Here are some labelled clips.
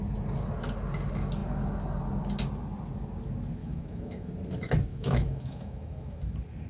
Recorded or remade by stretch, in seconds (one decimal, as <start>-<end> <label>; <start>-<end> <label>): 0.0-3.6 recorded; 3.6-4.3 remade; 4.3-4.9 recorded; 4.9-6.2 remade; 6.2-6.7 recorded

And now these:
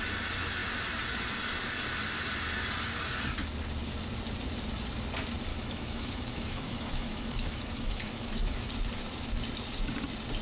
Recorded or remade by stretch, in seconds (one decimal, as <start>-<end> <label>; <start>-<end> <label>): 0.0-5.5 recorded; 5.5-8.7 remade; 8.7-10.4 recorded

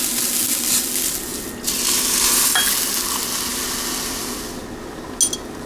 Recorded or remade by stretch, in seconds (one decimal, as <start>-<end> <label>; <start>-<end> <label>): 0.0-5.7 recorded

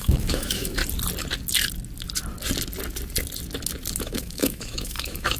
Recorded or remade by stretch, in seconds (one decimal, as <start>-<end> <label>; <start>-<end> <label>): 0.0-0.8 remade; 0.8-4.0 recorded; 4.0-5.4 remade